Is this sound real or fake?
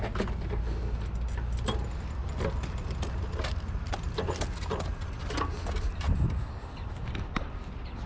real